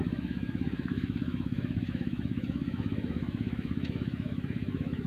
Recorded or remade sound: remade